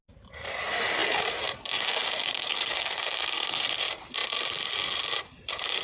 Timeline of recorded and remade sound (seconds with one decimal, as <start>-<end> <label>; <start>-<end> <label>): 0.0-5.8 recorded